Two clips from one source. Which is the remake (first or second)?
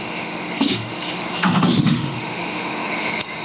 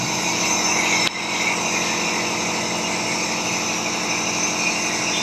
first